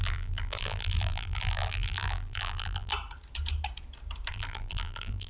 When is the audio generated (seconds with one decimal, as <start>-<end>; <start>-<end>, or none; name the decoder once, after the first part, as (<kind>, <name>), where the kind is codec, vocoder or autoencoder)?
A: 0.0-2.9 (vocoder, BigVGAN v2); 4.3-5.3